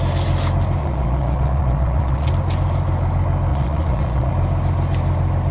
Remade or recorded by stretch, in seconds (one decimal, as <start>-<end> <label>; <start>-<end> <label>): 0.0-0.8 recorded; 0.8-2.3 remade; 2.3-3.5 recorded; 3.5-4.3 remade; 4.3-5.5 recorded